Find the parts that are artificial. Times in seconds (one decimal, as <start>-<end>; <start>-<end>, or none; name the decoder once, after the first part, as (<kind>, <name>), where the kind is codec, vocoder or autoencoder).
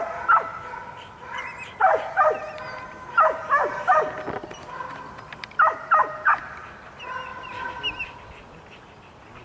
none